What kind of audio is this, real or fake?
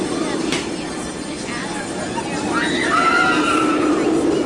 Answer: real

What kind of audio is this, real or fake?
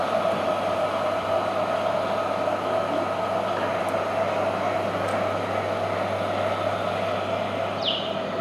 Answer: real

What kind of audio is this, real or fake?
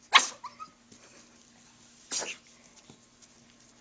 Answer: real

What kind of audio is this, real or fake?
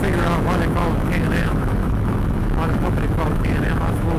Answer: fake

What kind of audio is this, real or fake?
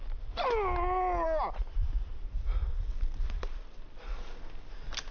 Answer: real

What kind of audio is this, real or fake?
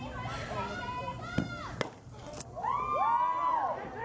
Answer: real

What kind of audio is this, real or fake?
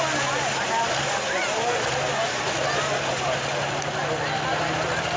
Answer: real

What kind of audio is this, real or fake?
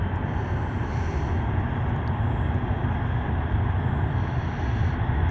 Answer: real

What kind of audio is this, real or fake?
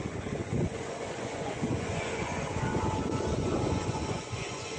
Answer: fake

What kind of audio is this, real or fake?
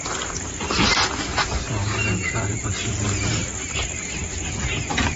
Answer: real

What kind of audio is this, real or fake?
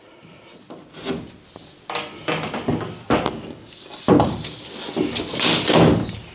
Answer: real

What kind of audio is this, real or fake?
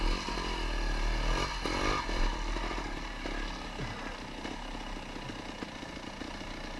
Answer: real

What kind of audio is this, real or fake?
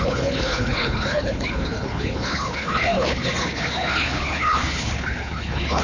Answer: fake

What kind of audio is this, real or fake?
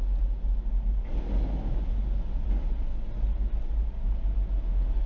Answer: real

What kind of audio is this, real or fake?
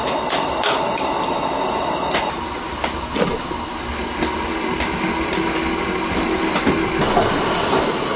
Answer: real